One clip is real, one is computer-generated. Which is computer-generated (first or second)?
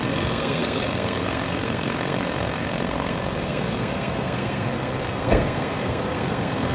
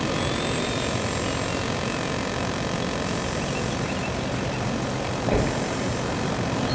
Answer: first